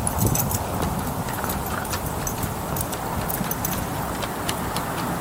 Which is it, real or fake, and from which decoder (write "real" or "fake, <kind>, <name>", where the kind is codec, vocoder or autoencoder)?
real